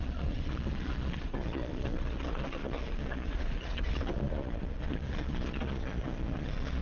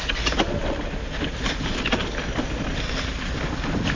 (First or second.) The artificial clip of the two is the first